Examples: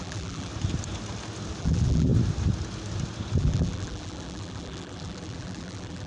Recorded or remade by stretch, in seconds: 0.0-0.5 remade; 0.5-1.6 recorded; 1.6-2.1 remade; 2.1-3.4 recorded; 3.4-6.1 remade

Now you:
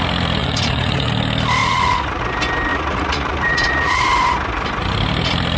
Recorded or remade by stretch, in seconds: 0.0-0.4 recorded; 0.4-1.1 remade; 1.1-1.6 recorded; 1.6-2.2 remade; 2.2-2.7 recorded; 2.7-4.0 remade; 4.0-5.6 recorded

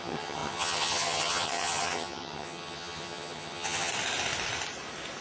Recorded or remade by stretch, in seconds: 0.0-3.9 remade; 3.9-5.2 recorded

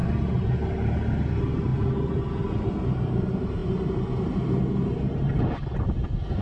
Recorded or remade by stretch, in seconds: 0.0-6.4 recorded

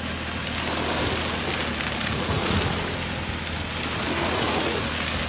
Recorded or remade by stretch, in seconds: 0.0-2.0 recorded; 2.0-2.6 remade; 2.6-4.1 recorded; 4.1-4.8 remade; 4.8-5.3 recorded

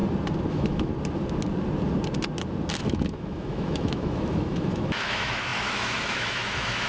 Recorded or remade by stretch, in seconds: 0.0-0.5 recorded; 0.5-0.9 remade; 0.9-2.8 recorded; 2.8-6.9 remade

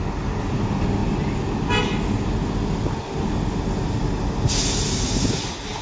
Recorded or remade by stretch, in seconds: 0.0-5.8 recorded

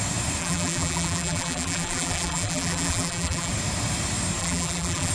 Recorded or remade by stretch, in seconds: 0.0-0.4 recorded; 0.4-3.5 remade; 3.5-4.4 recorded; 4.4-5.1 remade